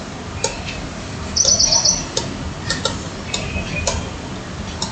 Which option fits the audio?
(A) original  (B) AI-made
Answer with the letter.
A